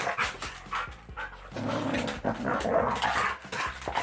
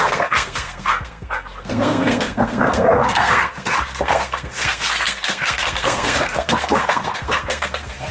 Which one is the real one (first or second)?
first